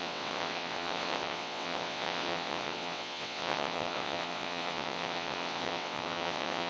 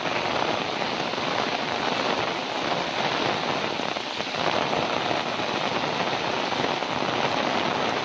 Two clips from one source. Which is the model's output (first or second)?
first